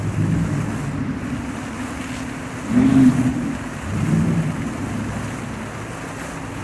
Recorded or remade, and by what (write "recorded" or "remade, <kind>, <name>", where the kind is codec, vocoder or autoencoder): recorded